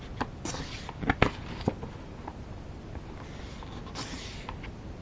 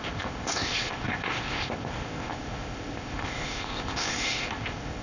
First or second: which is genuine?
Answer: first